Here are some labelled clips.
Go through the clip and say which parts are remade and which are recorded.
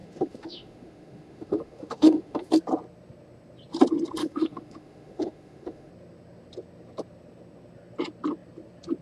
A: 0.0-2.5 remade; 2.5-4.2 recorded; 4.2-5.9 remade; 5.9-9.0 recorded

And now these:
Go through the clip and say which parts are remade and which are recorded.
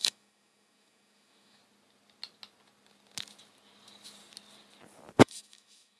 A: 0.0-1.6 remade; 1.6-5.2 recorded; 5.2-6.0 remade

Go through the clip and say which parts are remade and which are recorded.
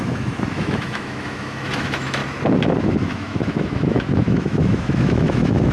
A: 0.0-2.2 remade; 2.2-2.8 recorded; 2.8-5.7 remade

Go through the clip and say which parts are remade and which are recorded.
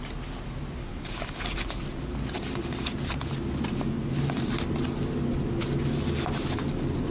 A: 0.0-7.1 recorded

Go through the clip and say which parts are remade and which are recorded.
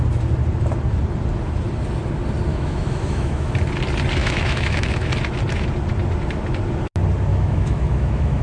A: 0.0-2.5 recorded; 2.5-3.5 remade; 3.5-4.2 recorded; 4.2-5.1 remade; 5.1-7.3 recorded; 7.3-8.4 remade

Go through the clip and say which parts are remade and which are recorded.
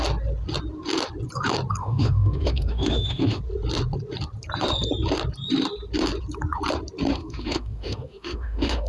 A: 0.0-1.8 recorded; 1.8-3.4 remade; 3.4-7.1 recorded; 7.1-8.9 remade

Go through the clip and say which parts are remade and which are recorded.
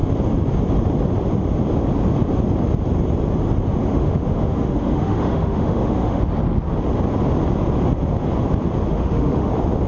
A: 0.0-3.8 recorded; 3.8-6.2 remade; 6.2-8.9 recorded; 8.9-9.5 remade; 9.5-9.9 recorded